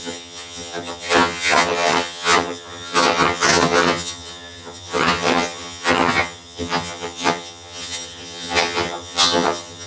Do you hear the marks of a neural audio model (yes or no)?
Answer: yes